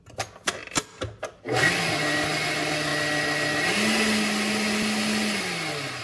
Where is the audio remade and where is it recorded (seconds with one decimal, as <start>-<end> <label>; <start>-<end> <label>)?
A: 0.0-6.0 recorded